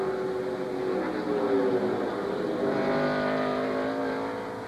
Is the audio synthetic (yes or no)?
no